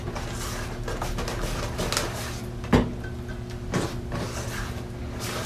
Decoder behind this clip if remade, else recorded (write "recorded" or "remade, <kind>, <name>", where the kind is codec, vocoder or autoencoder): recorded